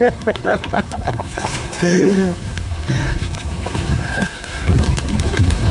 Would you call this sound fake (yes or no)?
yes